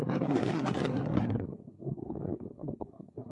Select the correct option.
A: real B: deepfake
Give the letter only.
B